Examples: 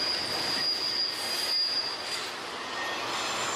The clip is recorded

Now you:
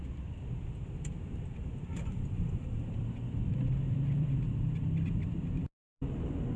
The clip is remade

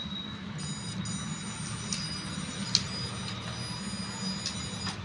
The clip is recorded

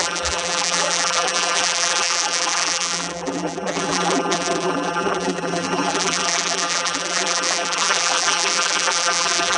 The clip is remade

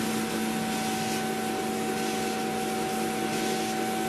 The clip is recorded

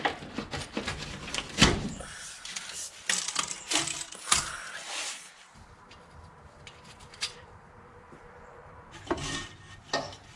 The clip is remade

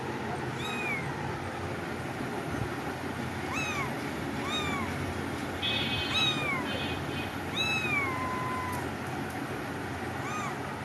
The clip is recorded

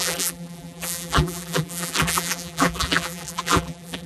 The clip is remade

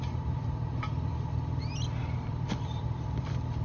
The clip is remade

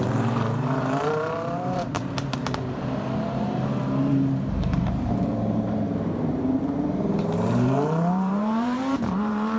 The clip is remade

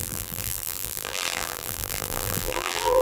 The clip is remade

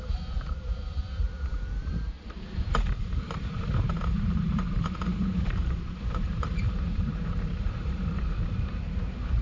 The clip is remade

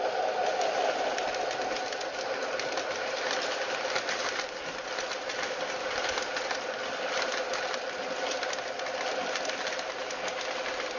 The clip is recorded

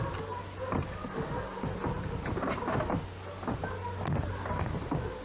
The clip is recorded